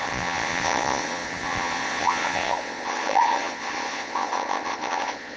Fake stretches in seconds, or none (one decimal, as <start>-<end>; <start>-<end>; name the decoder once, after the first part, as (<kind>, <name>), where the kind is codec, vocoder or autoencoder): 0.0-5.4 (vocoder, Vocos)